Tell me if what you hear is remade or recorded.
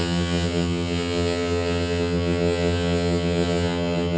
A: remade